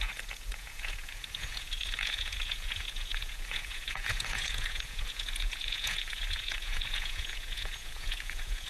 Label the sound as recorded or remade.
remade